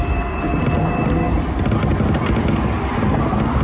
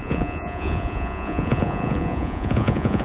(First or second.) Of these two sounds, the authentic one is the first